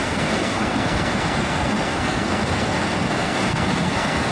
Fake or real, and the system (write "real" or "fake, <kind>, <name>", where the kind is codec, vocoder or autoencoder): fake, codec, SNAC